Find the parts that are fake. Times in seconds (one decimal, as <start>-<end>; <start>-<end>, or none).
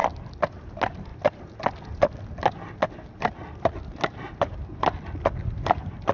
4.5-5.0